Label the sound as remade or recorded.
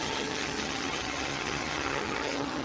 remade